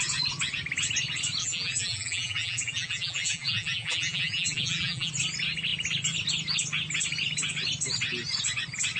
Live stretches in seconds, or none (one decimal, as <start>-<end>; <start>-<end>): 0.0-1.4; 5.1-9.0